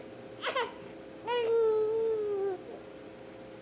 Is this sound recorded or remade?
recorded